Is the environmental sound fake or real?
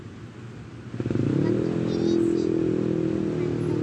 real